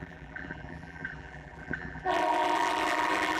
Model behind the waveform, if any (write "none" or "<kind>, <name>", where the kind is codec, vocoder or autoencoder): vocoder, BigVGAN v2